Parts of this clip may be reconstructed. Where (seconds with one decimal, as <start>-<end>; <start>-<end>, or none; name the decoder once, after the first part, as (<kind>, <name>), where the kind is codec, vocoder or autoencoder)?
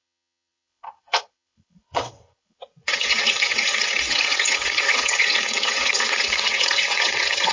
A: 0.0-7.5 (vocoder, WaveNeXt)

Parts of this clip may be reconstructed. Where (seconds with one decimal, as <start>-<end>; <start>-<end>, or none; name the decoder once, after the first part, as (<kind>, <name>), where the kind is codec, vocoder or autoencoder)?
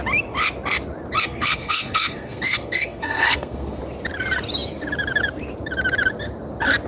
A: 1.2-3.8 (codec, SNAC)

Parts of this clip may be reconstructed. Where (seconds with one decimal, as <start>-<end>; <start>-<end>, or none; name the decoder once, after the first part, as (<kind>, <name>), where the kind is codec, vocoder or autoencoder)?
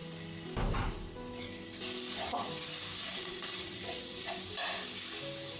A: 3.0-4.3 (vocoder, WaveNeXt)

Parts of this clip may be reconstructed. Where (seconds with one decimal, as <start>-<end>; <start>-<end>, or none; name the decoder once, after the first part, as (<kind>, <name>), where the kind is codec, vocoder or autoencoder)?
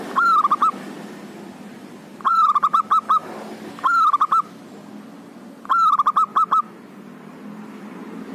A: 2.3-2.8 (vocoder, BigVGAN v2)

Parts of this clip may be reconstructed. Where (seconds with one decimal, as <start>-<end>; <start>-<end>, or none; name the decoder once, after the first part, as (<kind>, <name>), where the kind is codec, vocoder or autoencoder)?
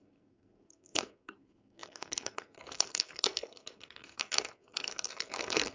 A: 0.0-5.7 (codec, SNAC)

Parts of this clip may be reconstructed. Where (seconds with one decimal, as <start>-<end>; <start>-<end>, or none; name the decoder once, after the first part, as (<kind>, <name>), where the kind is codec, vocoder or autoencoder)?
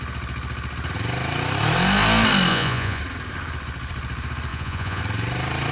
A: 2.5-3.0 (vocoder, Vocos); 4.5-5.0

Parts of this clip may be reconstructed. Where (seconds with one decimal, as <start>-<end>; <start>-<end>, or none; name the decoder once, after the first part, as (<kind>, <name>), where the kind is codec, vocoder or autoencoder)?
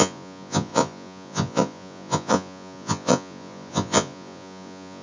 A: 0.0-5.0 (vocoder, Vocos)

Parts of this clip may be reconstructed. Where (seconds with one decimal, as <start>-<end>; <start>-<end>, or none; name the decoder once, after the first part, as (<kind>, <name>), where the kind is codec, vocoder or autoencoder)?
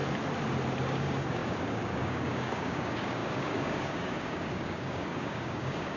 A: 0.8-6.0 (codec, DAC)